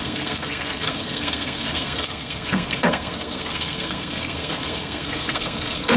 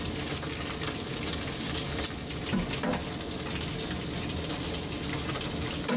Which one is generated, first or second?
first